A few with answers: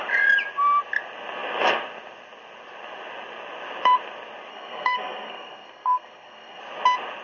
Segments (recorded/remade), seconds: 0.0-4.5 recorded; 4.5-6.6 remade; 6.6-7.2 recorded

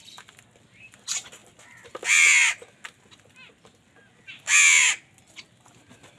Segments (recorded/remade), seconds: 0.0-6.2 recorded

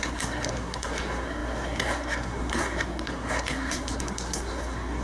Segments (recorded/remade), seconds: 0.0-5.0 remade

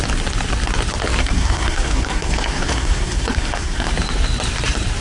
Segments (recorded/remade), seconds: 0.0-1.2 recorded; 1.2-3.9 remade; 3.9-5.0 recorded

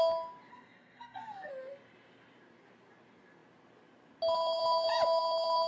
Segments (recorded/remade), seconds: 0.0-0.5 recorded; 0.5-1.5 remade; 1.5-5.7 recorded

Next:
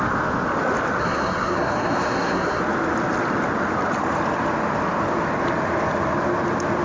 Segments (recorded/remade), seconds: 0.0-1.0 recorded; 1.0-2.6 remade; 2.6-6.8 recorded